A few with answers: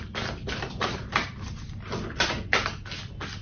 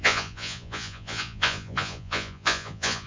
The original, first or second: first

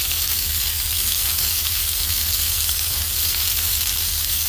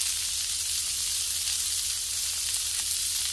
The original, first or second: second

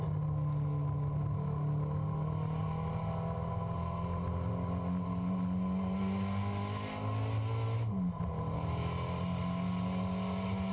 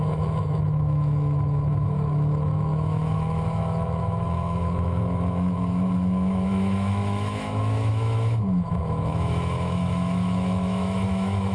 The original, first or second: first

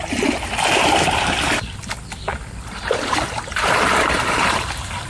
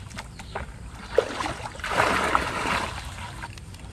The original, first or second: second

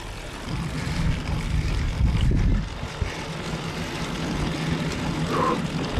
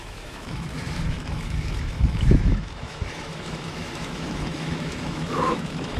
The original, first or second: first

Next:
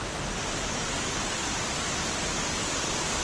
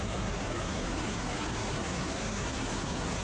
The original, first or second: first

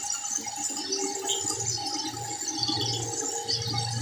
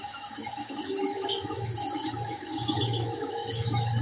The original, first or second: first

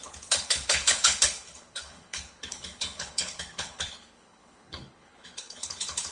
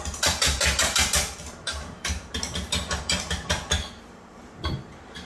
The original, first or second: second